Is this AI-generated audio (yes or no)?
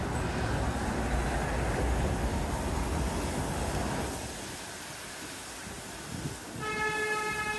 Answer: no